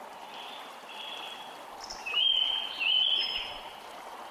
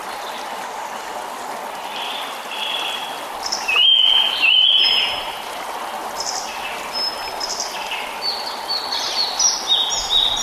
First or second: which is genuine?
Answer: second